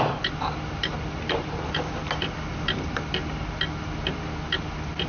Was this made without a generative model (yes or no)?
yes